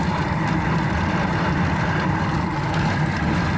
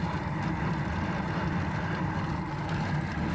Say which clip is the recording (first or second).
second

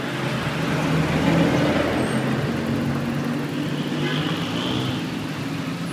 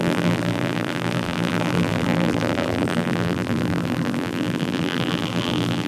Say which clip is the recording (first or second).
first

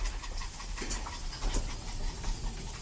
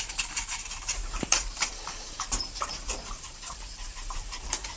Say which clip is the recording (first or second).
first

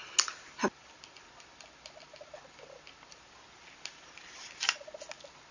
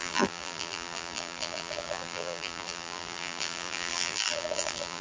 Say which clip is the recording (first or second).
first